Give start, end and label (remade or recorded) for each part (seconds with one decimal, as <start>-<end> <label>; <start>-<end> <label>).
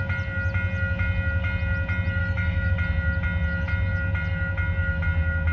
0.0-2.2 recorded; 2.2-2.7 remade; 2.7-5.5 recorded